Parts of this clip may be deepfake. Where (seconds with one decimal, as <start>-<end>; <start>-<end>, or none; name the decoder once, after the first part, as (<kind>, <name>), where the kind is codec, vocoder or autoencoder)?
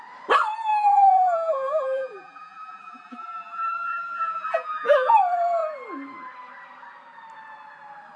0.7-5.1 (vocoder, BigVGAN v2)